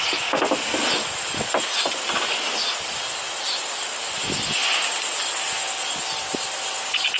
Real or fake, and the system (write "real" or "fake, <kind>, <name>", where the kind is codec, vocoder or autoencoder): real